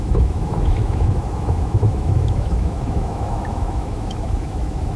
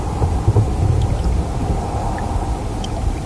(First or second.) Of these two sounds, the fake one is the first